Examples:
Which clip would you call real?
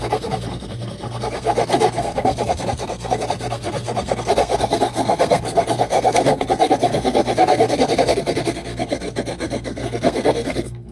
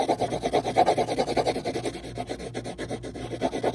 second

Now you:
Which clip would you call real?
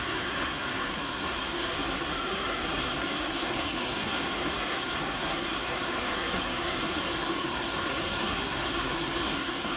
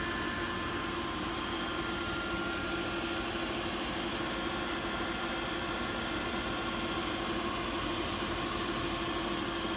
second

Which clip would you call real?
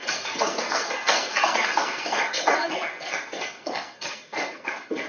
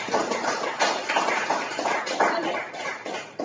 second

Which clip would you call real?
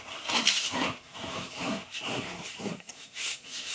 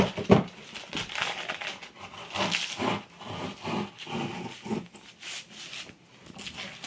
second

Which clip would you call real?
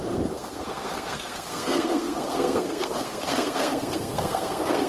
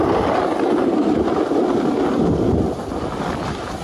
second